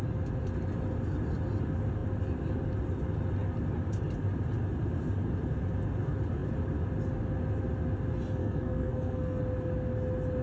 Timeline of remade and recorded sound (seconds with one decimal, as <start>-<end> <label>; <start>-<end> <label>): 0.0-8.4 recorded; 8.4-9.4 remade; 9.4-10.4 recorded